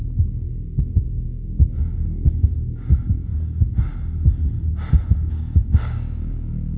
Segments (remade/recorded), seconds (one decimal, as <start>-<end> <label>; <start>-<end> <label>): 0.0-0.8 recorded; 0.8-3.3 remade; 3.3-5.3 recorded; 5.3-6.8 remade

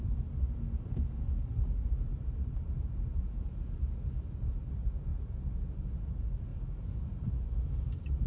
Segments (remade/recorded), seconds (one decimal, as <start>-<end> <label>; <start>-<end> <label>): 0.0-2.1 recorded; 2.1-2.9 remade; 2.9-6.5 recorded; 6.5-7.3 remade; 7.3-8.3 recorded

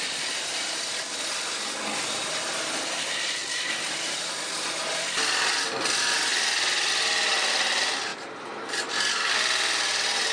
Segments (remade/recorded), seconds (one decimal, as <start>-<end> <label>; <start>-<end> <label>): 0.0-8.1 recorded; 8.1-9.1 remade; 9.1-10.3 recorded

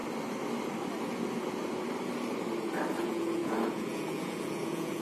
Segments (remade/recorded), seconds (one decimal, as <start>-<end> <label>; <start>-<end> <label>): 0.0-3.0 recorded; 3.0-5.0 remade